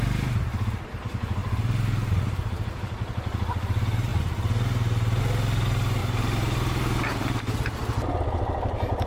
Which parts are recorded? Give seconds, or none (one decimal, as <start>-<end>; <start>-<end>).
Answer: 0.0-1.4; 3.1-6.0; 7.4-9.1

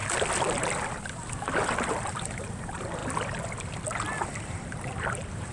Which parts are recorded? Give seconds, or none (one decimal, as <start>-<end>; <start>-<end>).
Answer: 0.0-1.9; 3.0-4.4

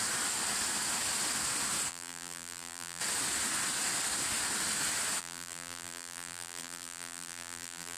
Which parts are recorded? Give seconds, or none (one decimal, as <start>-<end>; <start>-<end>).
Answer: 0.0-1.9; 3.0-5.2

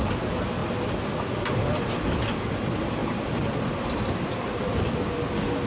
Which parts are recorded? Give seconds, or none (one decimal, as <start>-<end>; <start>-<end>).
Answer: 0.0-3.0; 3.6-5.7

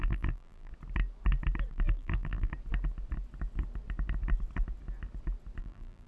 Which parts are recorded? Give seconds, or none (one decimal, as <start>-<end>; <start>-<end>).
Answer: 0.7-1.7; 2.5-5.6

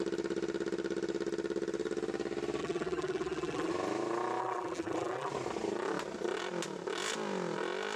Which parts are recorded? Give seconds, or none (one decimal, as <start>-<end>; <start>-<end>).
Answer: 0.0-2.6; 3.7-4.4; 5.3-8.0

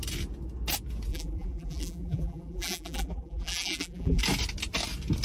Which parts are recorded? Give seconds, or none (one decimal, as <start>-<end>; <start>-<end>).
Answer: 0.0-1.1; 4.2-5.2